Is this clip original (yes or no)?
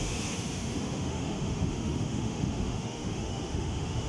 no